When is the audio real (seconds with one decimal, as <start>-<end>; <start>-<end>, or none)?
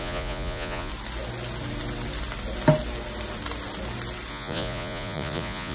0.9-4.3